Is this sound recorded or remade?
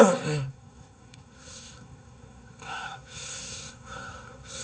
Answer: remade